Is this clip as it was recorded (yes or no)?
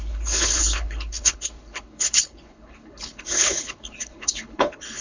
no